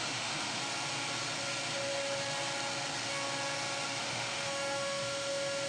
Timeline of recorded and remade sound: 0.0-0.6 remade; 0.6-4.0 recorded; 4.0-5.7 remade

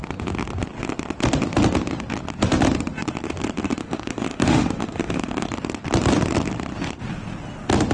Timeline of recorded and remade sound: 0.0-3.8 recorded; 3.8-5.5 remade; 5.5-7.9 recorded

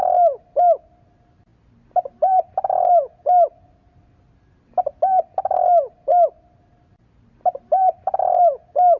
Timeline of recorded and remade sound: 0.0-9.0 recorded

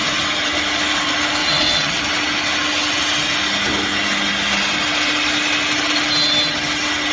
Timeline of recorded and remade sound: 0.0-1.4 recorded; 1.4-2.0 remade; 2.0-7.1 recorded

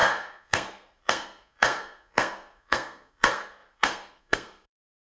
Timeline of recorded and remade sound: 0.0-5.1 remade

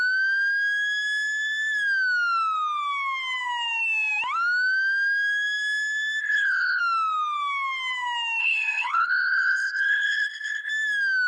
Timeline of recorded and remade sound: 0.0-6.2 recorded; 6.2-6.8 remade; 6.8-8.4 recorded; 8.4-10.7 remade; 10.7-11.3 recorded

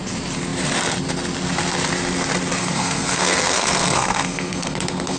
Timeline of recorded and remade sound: 0.0-2.6 recorded; 2.6-5.2 remade

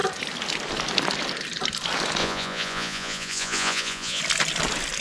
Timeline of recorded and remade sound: 0.0-2.2 recorded; 2.2-4.2 remade; 4.2-5.0 recorded